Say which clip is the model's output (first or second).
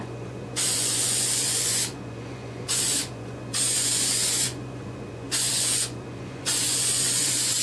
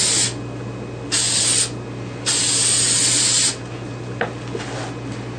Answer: first